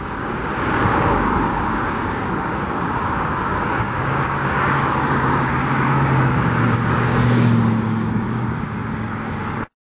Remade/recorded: remade